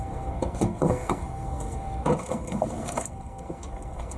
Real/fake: fake